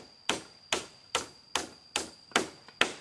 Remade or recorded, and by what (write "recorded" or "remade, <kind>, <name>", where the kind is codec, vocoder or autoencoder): recorded